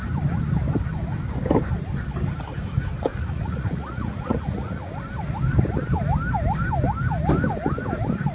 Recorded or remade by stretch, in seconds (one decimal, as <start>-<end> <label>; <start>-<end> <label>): 0.0-3.1 recorded; 3.1-4.9 remade; 4.9-8.3 recorded